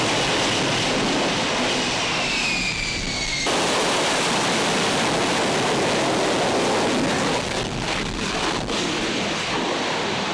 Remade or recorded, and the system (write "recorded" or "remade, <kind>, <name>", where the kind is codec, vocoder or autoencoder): recorded